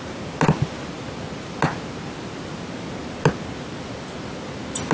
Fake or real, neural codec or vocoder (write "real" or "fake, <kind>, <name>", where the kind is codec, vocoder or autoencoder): real